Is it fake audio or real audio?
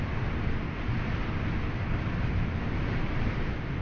real